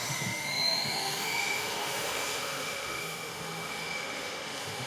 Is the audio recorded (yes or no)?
no